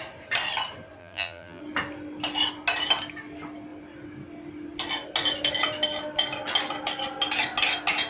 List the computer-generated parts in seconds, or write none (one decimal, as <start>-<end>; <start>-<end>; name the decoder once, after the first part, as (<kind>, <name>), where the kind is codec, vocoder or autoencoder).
1.0-1.6 (vocoder, BigVGAN v2)